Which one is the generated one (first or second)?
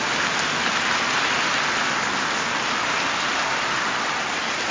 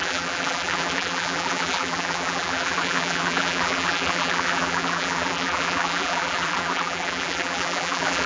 second